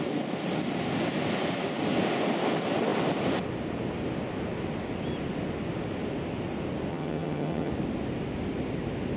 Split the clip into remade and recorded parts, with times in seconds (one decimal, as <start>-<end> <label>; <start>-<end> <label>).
0.0-6.9 recorded; 6.9-7.7 remade; 7.7-9.2 recorded